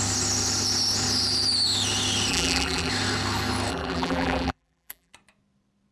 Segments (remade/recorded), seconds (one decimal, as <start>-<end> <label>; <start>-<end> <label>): 0.0-2.3 recorded; 2.3-2.9 remade; 2.9-3.7 recorded; 3.7-5.1 remade; 5.1-5.9 recorded